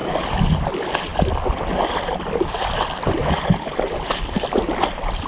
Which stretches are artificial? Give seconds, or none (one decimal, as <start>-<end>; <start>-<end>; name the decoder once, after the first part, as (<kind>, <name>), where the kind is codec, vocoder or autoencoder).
none